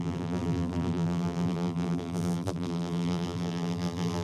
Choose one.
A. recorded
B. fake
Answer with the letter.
B